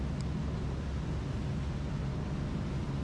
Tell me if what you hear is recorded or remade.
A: recorded